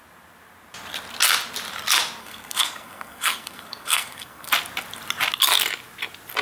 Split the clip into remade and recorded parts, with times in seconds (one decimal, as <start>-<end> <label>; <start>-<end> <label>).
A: 0.0-2.2 recorded; 2.2-4.5 remade; 4.5-6.4 recorded